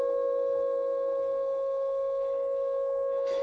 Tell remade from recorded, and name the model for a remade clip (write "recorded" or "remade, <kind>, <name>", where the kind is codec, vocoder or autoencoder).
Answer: remade, autoencoder, DAC-VAE